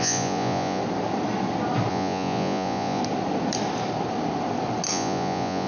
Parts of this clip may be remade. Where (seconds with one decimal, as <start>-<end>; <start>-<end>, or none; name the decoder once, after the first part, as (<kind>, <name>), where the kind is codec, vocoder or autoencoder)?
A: 0.0-0.8 (vocoder, Vocos); 1.9-3.0; 4.9-5.7